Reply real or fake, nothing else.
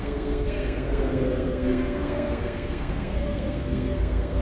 fake